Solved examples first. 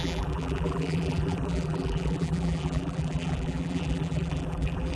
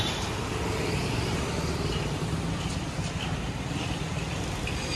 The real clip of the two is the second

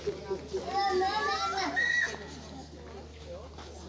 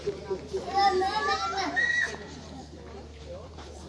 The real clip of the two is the first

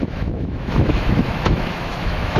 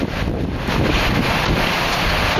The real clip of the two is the second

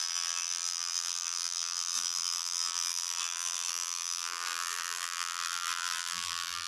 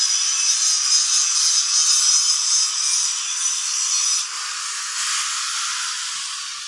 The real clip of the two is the second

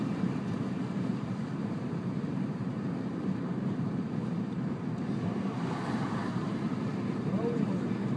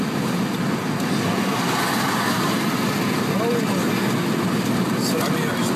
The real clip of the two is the second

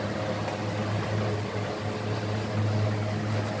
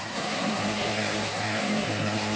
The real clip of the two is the first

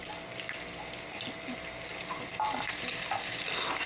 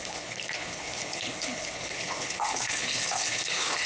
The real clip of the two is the first